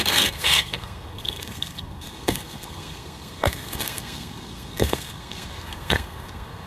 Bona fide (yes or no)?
no